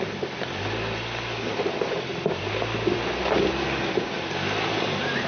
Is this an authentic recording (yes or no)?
yes